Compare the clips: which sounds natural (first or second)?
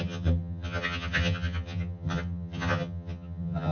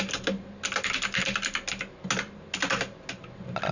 second